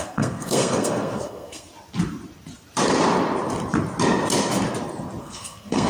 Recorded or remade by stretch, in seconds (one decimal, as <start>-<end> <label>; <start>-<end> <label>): 0.0-1.7 remade; 1.7-5.2 recorded; 5.2-5.9 remade